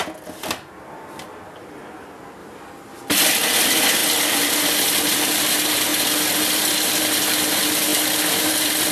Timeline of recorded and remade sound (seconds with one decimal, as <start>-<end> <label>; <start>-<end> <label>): 0.0-2.4 recorded; 2.4-3.3 remade; 3.3-8.9 recorded